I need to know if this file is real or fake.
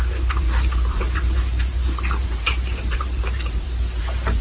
fake